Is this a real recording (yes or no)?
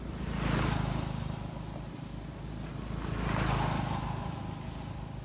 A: yes